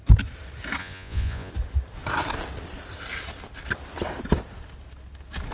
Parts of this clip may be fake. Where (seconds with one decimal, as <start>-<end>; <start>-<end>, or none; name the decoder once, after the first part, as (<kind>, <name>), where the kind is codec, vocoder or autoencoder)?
0.8-1.5 (vocoder, Vocos)